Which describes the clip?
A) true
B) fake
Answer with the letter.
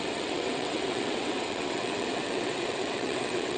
B